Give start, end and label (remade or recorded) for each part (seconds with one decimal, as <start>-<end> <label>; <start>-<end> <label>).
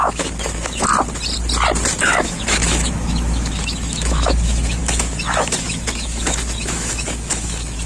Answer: 0.0-0.9 remade; 0.9-2.0 recorded; 2.0-7.9 remade